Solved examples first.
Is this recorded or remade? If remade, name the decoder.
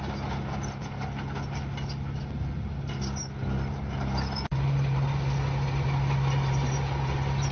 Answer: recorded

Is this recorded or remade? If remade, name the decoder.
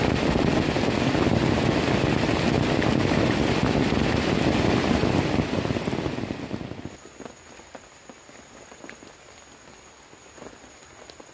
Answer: recorded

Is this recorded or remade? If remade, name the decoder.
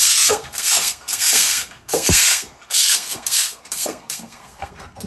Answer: remade, codec, SNAC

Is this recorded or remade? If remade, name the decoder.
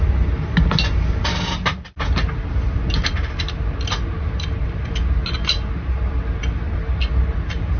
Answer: recorded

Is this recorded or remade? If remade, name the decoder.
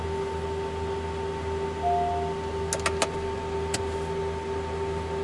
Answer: recorded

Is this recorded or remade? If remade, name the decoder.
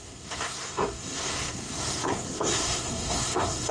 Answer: remade, codec, SNAC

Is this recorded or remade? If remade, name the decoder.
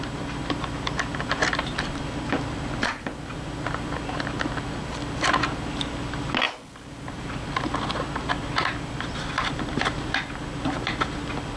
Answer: recorded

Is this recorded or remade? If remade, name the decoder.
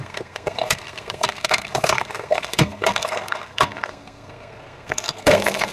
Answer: remade, codec, SNAC